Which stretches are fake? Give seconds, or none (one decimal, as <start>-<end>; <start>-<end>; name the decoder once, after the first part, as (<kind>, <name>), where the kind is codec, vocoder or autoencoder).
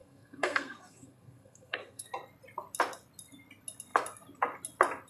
0.0-2.1 (codec, SNAC)